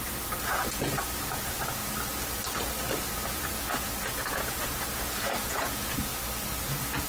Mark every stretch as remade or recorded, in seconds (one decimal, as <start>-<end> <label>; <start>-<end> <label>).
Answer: 0.0-1.2 recorded; 1.2-1.8 remade; 1.8-3.0 recorded; 3.0-6.1 remade; 6.1-7.1 recorded